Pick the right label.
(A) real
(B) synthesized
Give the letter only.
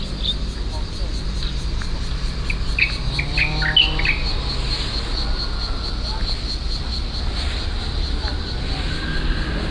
A